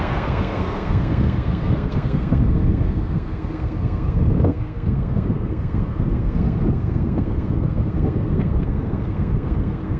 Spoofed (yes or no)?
yes